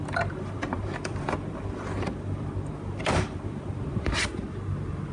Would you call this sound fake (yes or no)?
yes